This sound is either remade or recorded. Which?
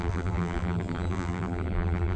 remade